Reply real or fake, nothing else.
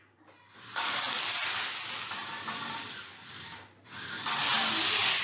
real